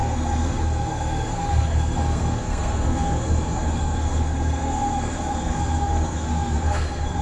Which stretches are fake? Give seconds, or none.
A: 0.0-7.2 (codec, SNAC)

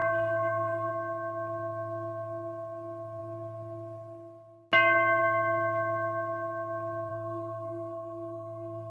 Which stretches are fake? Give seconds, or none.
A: 0.0-0.9 (codec, SNAC); 7.1-8.9

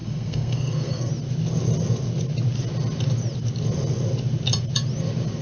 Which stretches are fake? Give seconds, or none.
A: 0.0-1.1 (codec, SNAC)

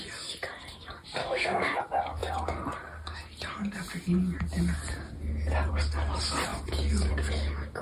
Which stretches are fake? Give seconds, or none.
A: 1.2-1.8 (codec, SNAC)

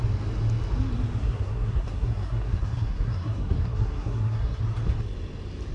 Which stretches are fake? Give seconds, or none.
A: 1.2-4.6 (codec, SNAC)